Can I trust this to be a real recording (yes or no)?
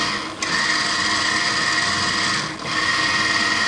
yes